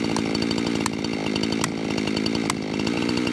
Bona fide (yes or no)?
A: yes